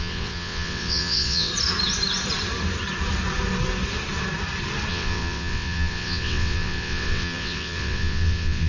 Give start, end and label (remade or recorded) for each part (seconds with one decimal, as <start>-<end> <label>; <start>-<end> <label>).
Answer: 0.0-1.5 remade; 1.5-4.9 recorded; 4.9-8.7 remade

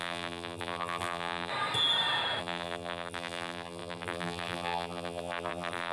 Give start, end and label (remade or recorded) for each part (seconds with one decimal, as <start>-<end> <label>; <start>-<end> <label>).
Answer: 0.0-1.5 remade; 1.5-2.4 recorded; 2.4-5.9 remade

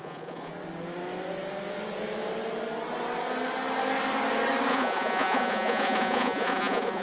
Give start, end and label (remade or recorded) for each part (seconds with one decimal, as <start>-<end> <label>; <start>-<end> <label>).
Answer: 0.0-0.5 remade; 0.5-4.7 recorded; 4.7-7.0 remade

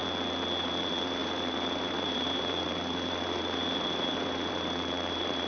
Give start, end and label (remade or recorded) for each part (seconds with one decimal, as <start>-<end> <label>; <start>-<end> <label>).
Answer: 0.0-0.6 recorded; 0.6-5.5 remade

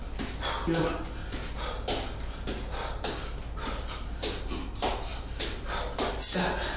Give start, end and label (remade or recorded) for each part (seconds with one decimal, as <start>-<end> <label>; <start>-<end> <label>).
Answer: 0.0-6.8 recorded

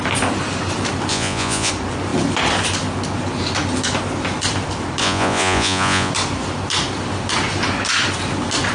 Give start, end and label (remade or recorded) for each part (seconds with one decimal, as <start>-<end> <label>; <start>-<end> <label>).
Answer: 0.0-1.1 recorded; 1.1-1.7 remade; 1.7-5.0 recorded; 5.0-6.1 remade; 6.1-8.7 recorded